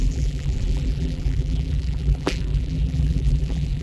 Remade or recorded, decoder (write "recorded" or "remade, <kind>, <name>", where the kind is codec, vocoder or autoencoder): remade, vocoder, BigVGAN v2